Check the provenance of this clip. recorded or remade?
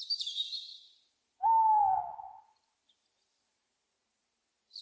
recorded